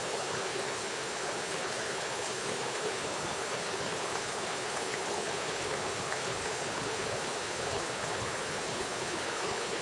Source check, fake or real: fake